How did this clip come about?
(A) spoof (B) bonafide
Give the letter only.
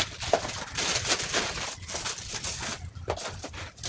B